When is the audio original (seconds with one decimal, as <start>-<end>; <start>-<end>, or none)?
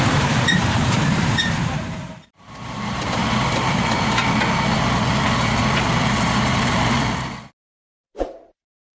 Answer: 3.2-7.6